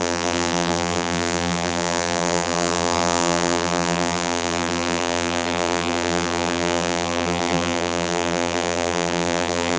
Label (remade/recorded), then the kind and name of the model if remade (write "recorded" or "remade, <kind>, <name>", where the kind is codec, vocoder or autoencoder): remade, vocoder, BigVGAN v2